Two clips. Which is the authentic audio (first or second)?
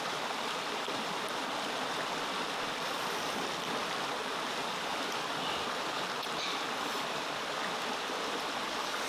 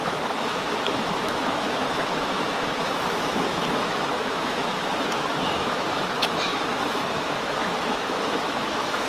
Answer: first